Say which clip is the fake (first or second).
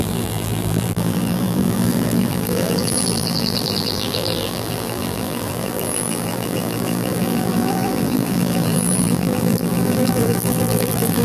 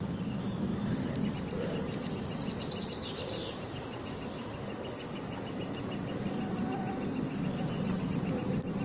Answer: first